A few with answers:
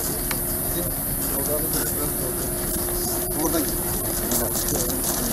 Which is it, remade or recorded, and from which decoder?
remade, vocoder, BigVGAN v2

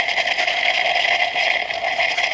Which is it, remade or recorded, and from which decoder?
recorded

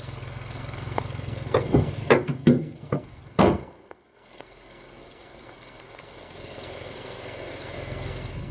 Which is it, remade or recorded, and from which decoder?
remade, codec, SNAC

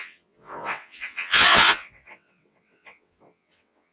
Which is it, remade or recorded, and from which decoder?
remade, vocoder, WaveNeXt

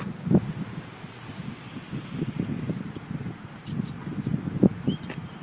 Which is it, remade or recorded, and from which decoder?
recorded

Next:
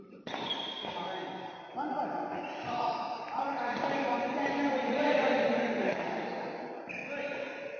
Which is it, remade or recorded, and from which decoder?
recorded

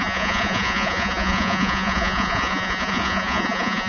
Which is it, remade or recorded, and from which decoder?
remade, vocoder, Vocos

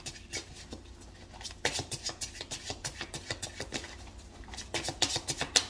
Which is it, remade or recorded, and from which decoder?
recorded